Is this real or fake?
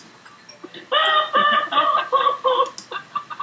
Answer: real